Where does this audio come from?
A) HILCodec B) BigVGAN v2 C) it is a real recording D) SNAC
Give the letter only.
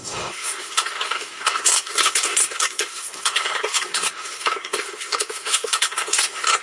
D